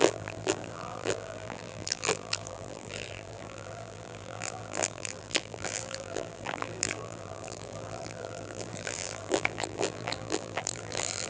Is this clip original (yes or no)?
no